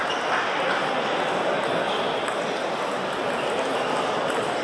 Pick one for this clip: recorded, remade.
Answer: recorded